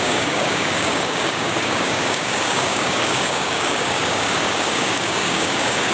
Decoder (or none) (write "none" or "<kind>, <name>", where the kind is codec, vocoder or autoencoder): codec, DAC